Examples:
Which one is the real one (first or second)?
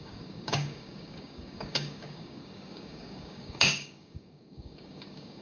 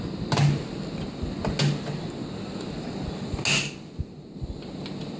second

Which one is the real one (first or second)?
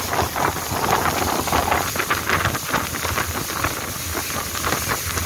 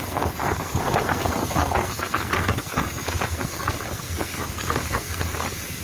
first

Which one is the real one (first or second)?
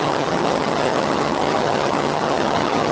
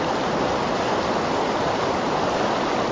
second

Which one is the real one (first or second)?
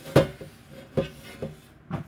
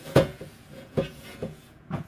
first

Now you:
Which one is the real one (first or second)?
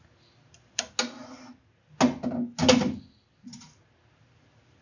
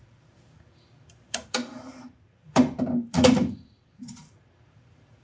first